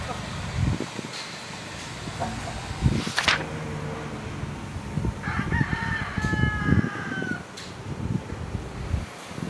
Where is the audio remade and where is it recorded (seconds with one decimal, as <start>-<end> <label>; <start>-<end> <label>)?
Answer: 0.0-9.5 recorded